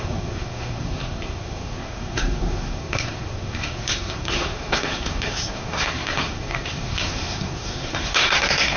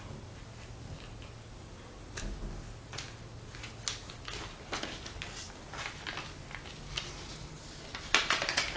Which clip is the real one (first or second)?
second